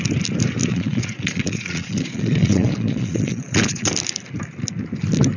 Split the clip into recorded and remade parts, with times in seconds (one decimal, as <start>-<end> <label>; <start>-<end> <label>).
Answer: 0.0-0.7 recorded; 0.7-3.9 remade; 3.9-5.4 recorded